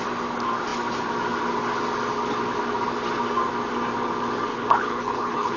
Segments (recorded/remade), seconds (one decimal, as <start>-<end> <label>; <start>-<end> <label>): 0.0-4.5 recorded; 4.5-5.6 remade

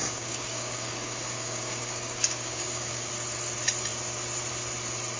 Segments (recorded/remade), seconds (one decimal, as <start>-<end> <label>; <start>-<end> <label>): 0.0-3.1 remade; 3.1-5.2 recorded

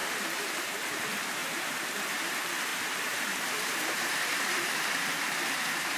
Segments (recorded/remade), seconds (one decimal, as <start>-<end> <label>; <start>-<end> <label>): 0.0-0.7 remade; 0.7-1.4 recorded; 1.4-2.2 remade; 2.2-2.7 recorded; 2.7-6.0 remade